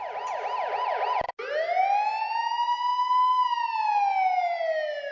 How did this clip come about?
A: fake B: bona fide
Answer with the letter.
B